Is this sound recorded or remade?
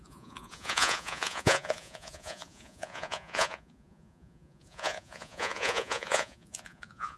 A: remade